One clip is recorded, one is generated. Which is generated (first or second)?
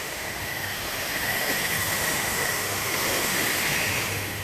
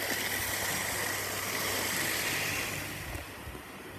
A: first